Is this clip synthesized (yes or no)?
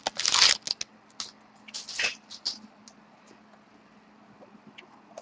no